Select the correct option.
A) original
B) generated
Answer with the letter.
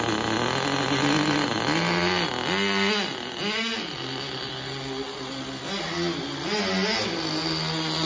A